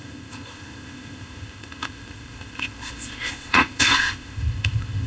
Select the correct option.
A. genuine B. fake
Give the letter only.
B